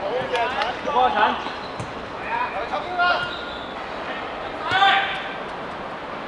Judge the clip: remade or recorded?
recorded